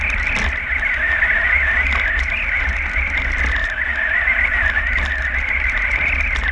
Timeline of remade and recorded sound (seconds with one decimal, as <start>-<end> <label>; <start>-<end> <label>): 0.0-3.6 recorded; 3.6-6.0 remade; 6.0-6.5 recorded